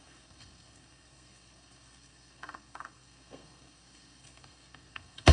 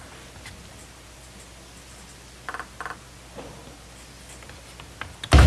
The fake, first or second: first